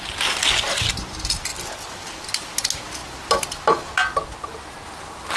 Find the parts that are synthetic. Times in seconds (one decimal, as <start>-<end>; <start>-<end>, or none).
1.5-2.3